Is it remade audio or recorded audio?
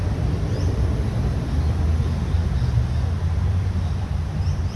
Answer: remade